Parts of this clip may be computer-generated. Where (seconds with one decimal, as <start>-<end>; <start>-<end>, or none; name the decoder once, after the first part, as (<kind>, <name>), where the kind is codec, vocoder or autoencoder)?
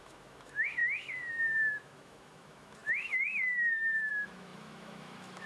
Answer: 0.0-5.5 (autoencoder, DAC-VAE)